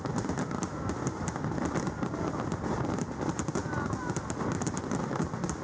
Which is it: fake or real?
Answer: real